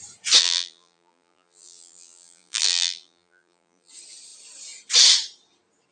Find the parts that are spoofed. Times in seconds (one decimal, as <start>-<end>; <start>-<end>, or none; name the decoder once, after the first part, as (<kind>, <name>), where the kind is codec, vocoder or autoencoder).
0.4-3.9 (vocoder, BigVGAN v2)

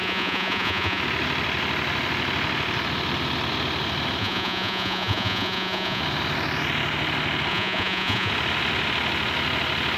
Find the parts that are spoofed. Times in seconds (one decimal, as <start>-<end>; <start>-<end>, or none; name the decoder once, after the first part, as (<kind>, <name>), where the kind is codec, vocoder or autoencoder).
0.0-1.0 (vocoder, Vocos); 4.2-6.0; 7.5-8.3